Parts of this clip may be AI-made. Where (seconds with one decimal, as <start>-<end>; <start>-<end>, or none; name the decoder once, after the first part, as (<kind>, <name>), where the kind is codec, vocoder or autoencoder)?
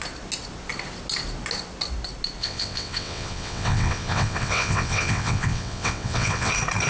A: 2.4-6.5 (vocoder, WaveNeXt)